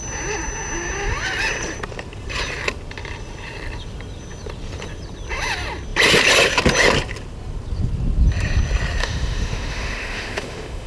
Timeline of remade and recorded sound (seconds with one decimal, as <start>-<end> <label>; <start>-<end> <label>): 0.0-9.0 recorded; 9.0-10.9 remade

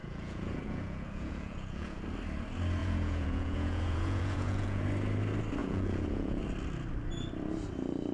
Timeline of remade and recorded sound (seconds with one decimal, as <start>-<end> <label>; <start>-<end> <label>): 0.0-2.0 remade; 2.0-2.8 recorded; 2.8-4.8 remade; 4.8-5.6 recorded; 5.6-6.4 remade; 6.4-8.1 recorded

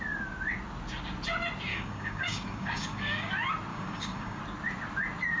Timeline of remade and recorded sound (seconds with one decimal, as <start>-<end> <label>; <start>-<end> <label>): 0.0-1.7 recorded; 1.7-3.3 remade; 3.3-3.7 recorded; 3.7-4.4 remade; 4.4-5.4 recorded

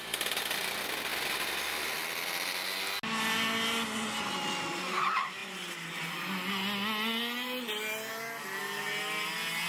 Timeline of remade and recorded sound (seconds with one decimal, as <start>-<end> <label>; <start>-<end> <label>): 0.0-9.7 recorded